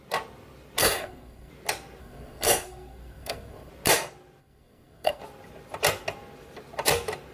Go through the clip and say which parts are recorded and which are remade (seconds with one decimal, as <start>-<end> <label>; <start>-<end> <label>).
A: 0.0-0.8 recorded; 0.8-1.5 remade; 1.5-2.0 recorded; 2.0-3.7 remade; 3.7-4.4 recorded; 4.4-5.2 remade; 5.2-7.3 recorded